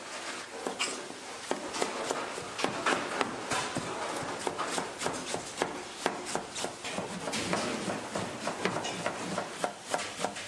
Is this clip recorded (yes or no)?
yes